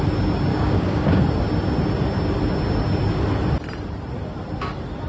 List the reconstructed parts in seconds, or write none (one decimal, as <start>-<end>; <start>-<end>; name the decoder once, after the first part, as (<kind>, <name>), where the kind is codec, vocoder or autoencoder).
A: 0.5-1.2 (codec, DAC)